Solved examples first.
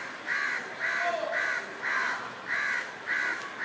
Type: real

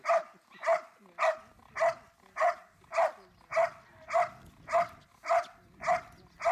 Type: real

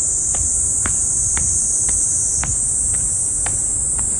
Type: fake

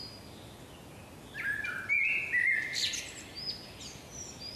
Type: real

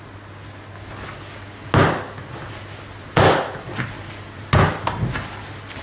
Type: real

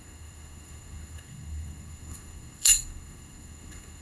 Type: fake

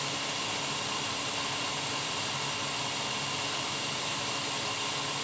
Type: real